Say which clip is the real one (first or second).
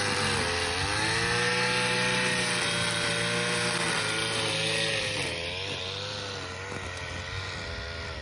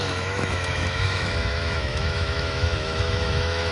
first